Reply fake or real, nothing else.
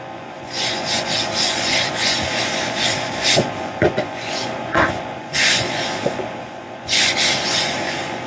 fake